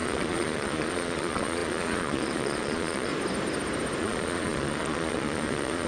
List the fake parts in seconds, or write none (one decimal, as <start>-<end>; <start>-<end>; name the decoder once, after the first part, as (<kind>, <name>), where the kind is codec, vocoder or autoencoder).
0.0-3.1 (vocoder, Vocos); 4.0-5.9